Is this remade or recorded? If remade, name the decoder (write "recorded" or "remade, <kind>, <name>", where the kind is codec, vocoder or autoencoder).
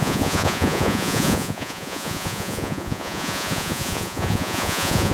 remade, vocoder, Vocos